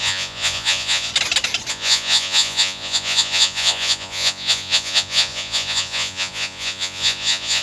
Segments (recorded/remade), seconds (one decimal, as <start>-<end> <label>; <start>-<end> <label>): 0.0-1.1 remade; 1.1-1.7 recorded; 1.7-7.6 remade